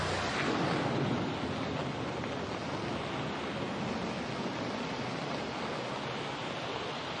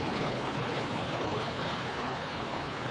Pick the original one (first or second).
first